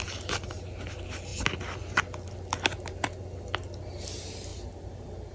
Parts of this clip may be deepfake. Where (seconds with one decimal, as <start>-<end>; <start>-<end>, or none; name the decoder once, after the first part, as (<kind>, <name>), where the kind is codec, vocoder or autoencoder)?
none